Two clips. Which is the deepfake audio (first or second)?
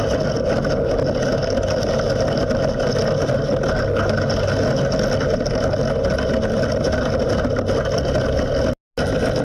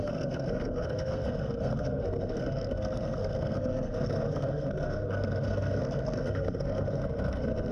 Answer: second